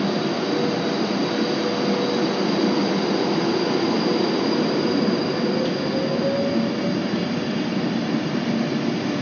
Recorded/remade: recorded